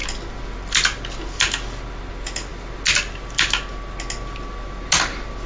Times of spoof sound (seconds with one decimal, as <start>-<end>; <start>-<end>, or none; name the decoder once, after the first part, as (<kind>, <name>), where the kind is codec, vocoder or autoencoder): none